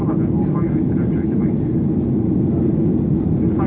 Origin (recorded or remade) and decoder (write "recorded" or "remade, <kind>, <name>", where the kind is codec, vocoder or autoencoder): recorded